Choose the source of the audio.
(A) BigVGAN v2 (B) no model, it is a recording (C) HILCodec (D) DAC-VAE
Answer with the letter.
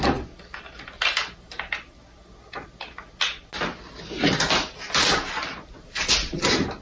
B